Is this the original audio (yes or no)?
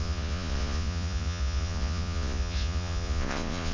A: no